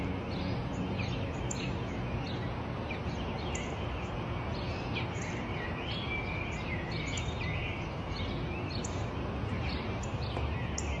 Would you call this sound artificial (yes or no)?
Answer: no